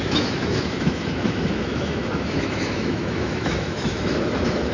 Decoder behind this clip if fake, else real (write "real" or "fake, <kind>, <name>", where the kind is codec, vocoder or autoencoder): fake, autoencoder, DAC-VAE